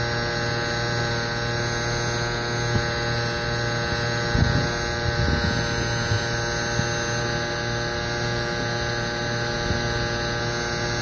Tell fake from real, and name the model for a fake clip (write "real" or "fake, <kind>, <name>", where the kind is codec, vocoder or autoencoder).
real